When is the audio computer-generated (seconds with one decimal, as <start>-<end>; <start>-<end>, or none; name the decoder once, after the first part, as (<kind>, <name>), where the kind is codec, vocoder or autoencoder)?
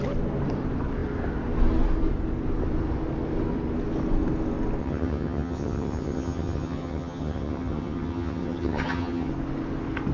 4.8-9.3 (vocoder, HiFi-GAN)